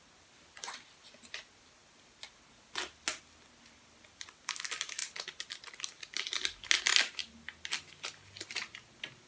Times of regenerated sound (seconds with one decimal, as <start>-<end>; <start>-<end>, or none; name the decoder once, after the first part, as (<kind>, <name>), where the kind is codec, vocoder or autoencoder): none